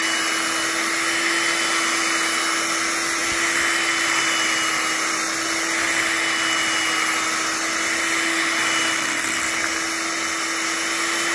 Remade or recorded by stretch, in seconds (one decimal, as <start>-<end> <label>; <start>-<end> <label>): 0.0-11.3 recorded